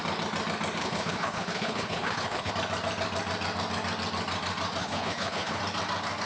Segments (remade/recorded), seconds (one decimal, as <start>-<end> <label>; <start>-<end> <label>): 0.0-0.8 recorded; 0.8-2.5 remade; 2.5-4.8 recorded; 4.8-5.6 remade; 5.6-6.3 recorded